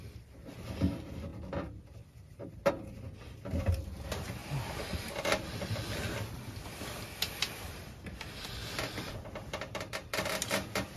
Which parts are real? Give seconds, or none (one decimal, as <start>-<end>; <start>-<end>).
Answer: 0.0-11.0